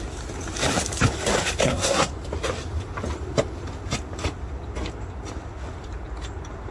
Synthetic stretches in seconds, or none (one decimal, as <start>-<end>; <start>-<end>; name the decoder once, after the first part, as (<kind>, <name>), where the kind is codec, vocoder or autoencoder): 1.6-2.1 (codec, SNAC)